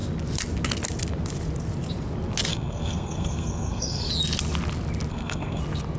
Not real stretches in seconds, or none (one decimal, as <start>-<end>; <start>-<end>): 2.5-4.1; 5.1-5.6